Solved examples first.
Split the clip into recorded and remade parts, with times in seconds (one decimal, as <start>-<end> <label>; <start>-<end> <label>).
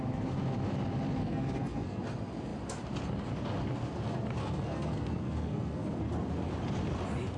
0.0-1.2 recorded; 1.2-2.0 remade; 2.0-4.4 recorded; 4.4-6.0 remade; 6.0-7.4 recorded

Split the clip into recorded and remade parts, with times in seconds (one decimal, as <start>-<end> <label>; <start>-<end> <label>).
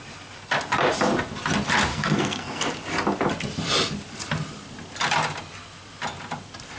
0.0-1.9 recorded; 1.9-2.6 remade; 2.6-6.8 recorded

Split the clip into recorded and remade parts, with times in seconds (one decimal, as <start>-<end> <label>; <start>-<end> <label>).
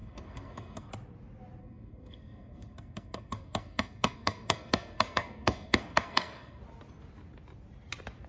0.0-0.9 remade; 0.9-1.6 recorded; 1.6-6.6 remade; 6.6-8.3 recorded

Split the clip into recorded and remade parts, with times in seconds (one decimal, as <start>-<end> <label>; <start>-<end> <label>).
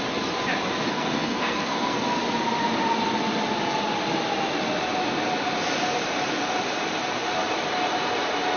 0.0-0.9 recorded; 0.9-2.2 remade; 2.2-8.6 recorded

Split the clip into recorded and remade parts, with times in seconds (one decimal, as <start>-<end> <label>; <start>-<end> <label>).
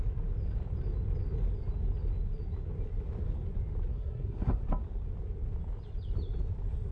0.0-3.9 recorded; 3.9-4.6 remade; 4.6-6.9 recorded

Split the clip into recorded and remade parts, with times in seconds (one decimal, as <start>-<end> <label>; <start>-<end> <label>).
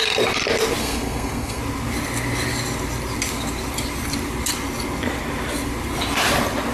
0.0-0.8 recorded; 0.8-1.6 remade; 1.6-6.7 recorded